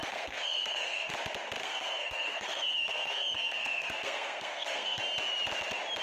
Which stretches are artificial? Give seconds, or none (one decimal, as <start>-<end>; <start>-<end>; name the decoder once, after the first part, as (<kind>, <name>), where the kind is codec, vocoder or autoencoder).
0.0-1.1 (codec, SNAC); 1.6-5.0